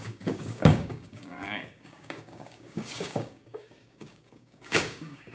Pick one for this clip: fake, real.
fake